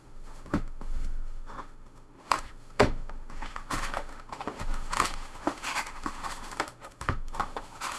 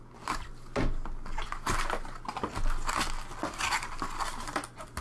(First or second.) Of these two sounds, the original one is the second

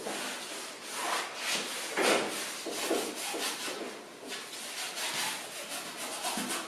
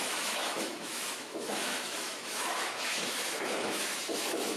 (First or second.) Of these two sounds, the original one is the first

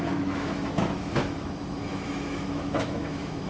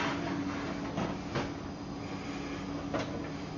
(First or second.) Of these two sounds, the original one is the second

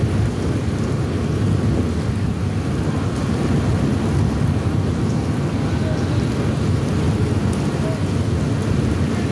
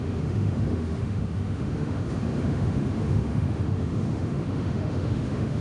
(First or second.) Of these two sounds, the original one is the first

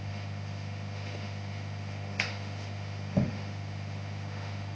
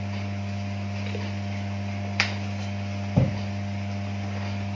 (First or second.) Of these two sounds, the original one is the second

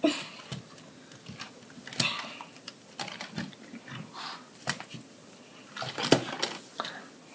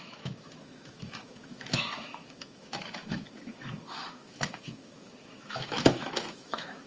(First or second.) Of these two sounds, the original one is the first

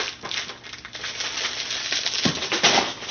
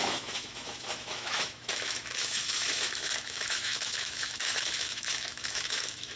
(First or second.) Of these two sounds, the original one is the first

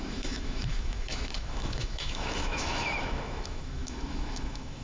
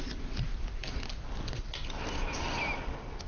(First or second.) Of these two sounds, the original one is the second